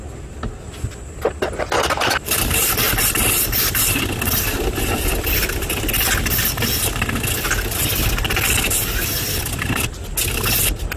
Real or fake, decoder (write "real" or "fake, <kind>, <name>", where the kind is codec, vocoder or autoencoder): real